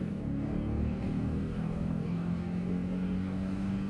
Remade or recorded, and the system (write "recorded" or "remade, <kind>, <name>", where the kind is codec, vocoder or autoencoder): remade, codec, DAC